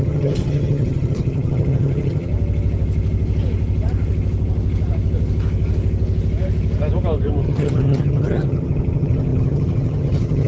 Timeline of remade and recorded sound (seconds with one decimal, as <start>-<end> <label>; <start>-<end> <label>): 0.0-2.3 remade; 2.3-7.4 recorded; 7.4-10.5 remade